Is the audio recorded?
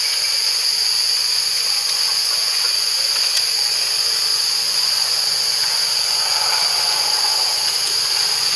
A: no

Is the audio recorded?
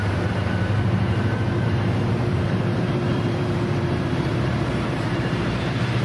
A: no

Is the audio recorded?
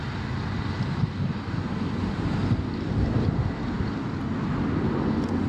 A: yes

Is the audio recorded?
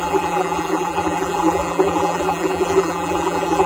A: no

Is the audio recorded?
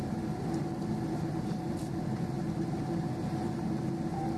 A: yes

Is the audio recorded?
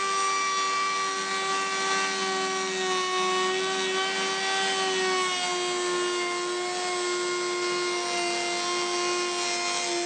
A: yes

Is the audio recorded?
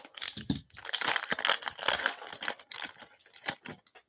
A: yes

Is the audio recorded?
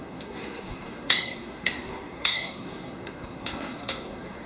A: no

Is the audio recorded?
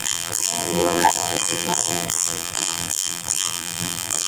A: no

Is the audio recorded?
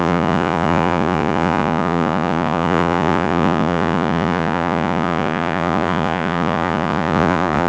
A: no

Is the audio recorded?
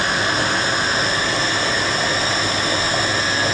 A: yes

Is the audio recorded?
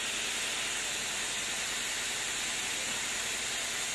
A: yes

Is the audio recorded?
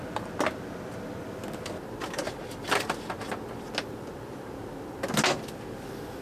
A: yes